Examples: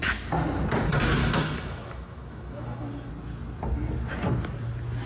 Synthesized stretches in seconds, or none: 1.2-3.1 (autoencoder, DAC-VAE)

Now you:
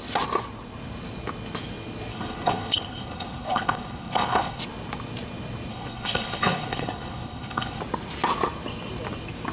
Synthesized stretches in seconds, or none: 2.1-4.6 (codec, HILCodec); 5.7-7.8

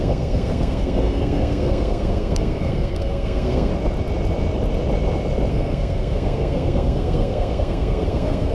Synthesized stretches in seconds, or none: 0.0-3.7 (codec, SNAC); 5.5-8.5